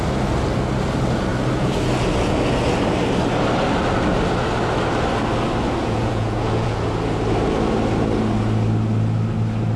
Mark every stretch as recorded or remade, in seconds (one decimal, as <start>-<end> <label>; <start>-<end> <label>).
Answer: 0.0-5.8 recorded; 5.8-6.8 remade; 6.8-9.8 recorded

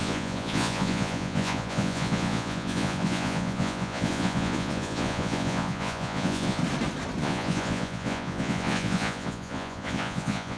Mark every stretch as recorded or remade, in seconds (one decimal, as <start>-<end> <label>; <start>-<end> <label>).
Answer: 0.0-6.6 remade; 6.6-7.2 recorded; 7.2-10.6 remade

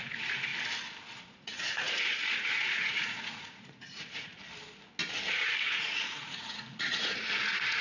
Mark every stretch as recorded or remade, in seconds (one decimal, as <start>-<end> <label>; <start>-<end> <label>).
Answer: 0.0-0.5 remade; 0.5-1.2 recorded; 1.2-4.3 remade; 4.3-5.6 recorded; 5.6-7.8 remade

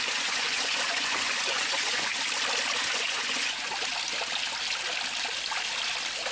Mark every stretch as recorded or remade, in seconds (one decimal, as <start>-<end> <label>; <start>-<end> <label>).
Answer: 0.0-2.1 remade; 2.1-2.8 recorded; 2.8-3.7 remade; 3.7-6.3 recorded

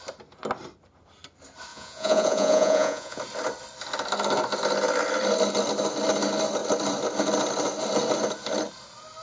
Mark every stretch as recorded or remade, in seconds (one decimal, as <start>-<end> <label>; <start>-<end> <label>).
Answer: 0.0-1.7 recorded; 1.7-3.2 remade; 3.2-9.2 recorded

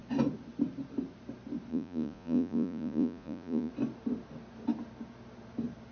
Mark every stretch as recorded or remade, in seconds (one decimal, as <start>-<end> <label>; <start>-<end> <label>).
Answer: 0.0-1.7 recorded; 1.7-3.7 remade; 3.7-5.9 recorded

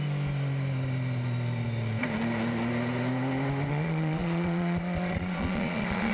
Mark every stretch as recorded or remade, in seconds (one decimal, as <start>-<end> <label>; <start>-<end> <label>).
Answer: 0.0-3.7 recorded; 3.7-6.1 remade

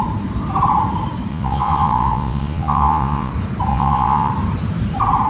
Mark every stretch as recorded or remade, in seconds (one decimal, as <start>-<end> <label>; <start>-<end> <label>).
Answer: 0.0-1.3 recorded; 1.3-3.3 remade; 3.3-3.7 recorded; 3.7-4.3 remade; 4.3-5.3 recorded